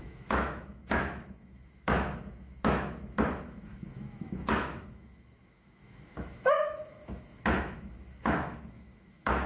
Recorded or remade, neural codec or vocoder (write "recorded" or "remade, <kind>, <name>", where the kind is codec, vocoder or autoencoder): remade, autoencoder, DAC-VAE